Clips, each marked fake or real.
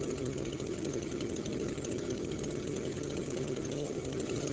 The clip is fake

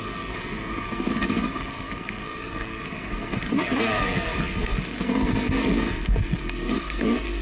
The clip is fake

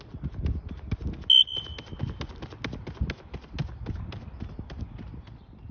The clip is real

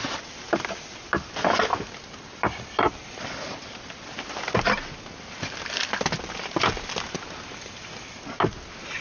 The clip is real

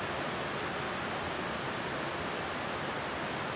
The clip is real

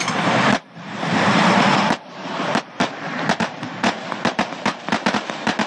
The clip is fake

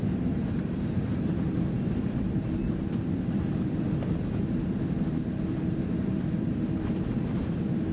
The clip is fake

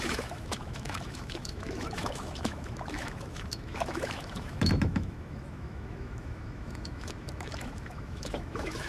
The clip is fake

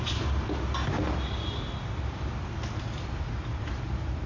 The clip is real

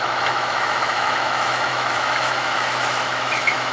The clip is fake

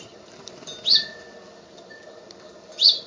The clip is real